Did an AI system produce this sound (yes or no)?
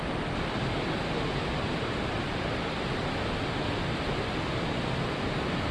no